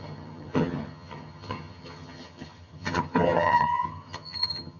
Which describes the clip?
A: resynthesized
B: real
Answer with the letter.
A